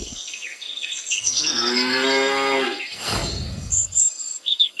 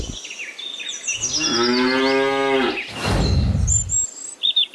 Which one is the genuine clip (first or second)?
second